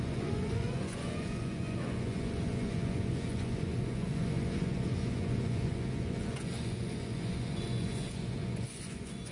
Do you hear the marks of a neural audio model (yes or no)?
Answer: yes